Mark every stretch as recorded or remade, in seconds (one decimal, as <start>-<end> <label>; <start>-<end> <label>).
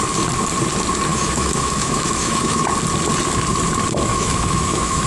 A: 0.0-1.1 recorded; 1.1-2.6 remade; 2.6-4.1 recorded; 4.1-5.1 remade